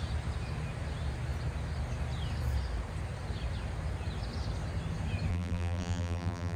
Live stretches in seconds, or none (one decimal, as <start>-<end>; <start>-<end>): 0.0-5.3